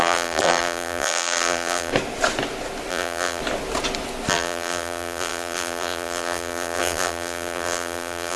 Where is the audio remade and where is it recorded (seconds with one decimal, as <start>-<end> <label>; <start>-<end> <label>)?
0.0-1.9 remade; 1.9-2.9 recorded; 2.9-3.4 remade; 3.4-4.3 recorded; 4.3-8.4 remade

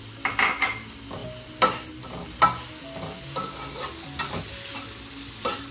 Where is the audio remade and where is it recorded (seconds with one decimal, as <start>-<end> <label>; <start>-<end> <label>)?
0.0-5.7 recorded

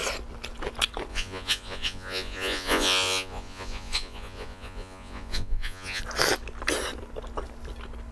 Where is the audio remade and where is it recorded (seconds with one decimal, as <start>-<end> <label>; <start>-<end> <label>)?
0.0-1.1 recorded; 1.1-6.0 remade; 6.0-8.1 recorded

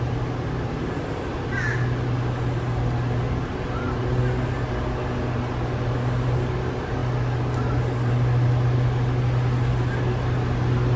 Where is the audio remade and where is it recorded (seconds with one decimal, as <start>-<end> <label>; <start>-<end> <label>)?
0.0-11.0 recorded

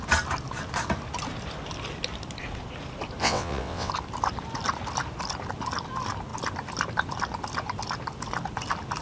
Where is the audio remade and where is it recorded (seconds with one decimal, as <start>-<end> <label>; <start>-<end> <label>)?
0.0-3.2 recorded; 3.2-3.9 remade; 3.9-9.0 recorded